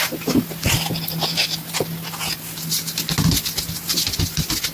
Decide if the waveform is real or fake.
real